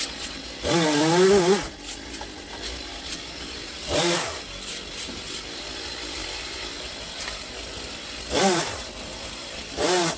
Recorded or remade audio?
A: recorded